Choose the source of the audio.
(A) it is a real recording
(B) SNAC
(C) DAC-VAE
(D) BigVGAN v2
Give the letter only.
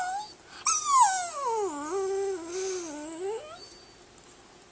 A